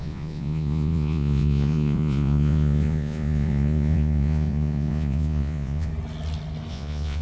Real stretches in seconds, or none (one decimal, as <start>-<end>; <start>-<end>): 5.9-6.7